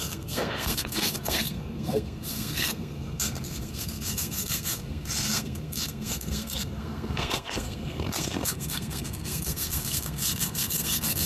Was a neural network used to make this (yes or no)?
yes